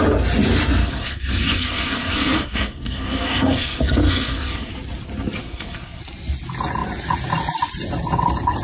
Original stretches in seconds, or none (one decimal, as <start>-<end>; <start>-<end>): 0.0-0.8; 4.7-5.4; 6.0-8.6